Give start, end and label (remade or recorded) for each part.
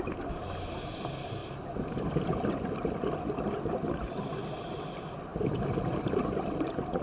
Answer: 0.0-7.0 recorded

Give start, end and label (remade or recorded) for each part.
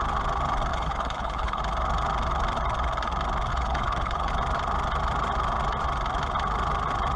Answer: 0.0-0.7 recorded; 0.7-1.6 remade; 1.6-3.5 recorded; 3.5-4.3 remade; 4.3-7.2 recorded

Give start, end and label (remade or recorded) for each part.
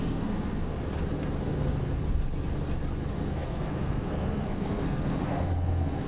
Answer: 0.0-0.8 remade; 0.8-1.4 recorded; 1.4-2.0 remade; 2.0-3.3 recorded; 3.3-6.1 remade